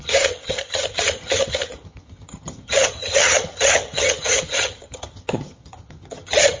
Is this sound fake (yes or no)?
yes